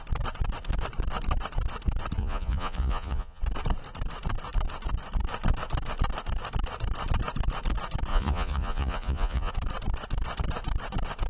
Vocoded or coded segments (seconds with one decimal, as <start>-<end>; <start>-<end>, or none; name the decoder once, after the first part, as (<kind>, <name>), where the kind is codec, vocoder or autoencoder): 2.2-3.4 (vocoder, Vocos); 8.1-9.5